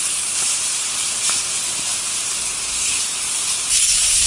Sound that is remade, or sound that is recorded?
recorded